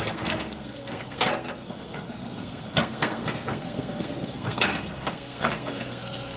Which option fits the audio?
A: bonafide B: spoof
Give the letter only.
B